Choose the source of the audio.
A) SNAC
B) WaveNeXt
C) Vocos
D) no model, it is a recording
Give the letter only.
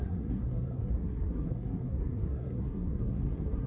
A